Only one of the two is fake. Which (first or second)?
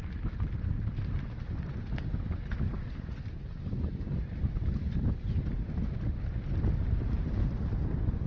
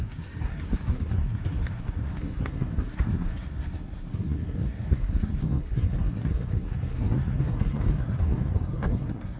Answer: second